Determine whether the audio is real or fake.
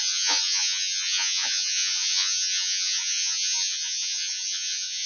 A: fake